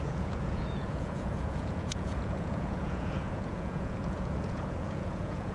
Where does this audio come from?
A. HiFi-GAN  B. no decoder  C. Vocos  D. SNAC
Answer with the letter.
C